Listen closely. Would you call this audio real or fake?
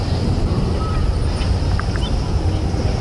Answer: real